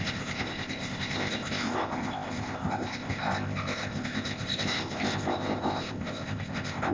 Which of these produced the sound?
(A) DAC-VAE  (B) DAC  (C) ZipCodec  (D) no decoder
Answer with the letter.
C